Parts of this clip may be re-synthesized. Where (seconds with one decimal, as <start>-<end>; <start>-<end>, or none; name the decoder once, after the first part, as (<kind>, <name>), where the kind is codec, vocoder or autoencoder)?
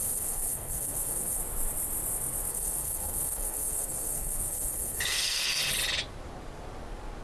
0.0-1.4 (codec, SNAC); 2.5-5.6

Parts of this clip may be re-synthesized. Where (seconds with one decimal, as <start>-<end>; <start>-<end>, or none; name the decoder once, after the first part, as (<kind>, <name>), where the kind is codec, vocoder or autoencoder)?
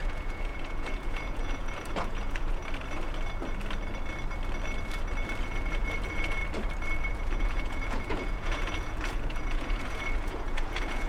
0.0-2.6 (vocoder, Vocos); 5.4-6.4; 7.1-11.1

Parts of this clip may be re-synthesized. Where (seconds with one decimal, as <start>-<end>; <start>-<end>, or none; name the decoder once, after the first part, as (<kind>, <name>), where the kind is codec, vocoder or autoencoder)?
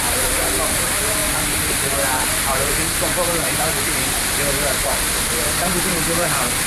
0.0-6.7 (vocoder, BigVGAN v2)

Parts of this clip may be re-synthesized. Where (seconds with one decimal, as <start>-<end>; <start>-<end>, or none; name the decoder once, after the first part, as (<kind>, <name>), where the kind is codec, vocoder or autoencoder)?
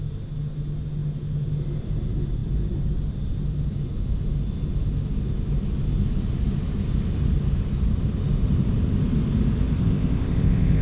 9.8-10.8 (codec, ZipCodec)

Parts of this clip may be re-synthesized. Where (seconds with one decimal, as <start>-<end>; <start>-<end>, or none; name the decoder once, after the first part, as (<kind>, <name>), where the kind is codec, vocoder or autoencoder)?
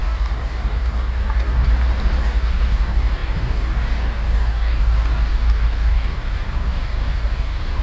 0.0-1.7 (codec, DAC); 2.2-7.8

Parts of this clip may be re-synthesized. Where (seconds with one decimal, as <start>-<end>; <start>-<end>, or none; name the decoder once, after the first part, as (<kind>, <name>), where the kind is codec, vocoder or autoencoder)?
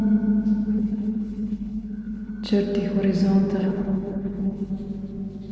0.7-2.3 (codec, HILCodec); 3.6-4.7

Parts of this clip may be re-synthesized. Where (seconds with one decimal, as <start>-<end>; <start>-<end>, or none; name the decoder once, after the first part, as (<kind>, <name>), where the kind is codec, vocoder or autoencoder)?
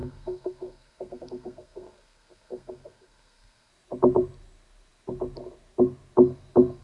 0.0-3.7 (codec, SNAC)